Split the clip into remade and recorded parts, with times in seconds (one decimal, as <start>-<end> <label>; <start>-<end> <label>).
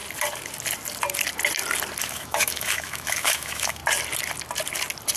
0.0-2.0 recorded; 2.0-3.8 remade; 3.8-5.2 recorded